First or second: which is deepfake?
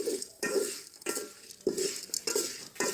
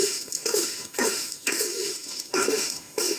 second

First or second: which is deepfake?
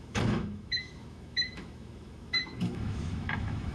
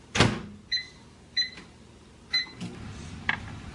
first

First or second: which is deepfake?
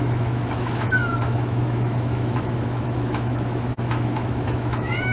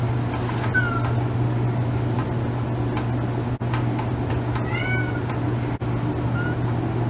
first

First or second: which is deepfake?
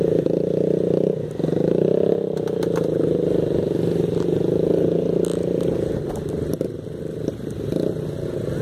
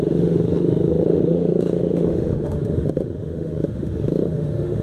second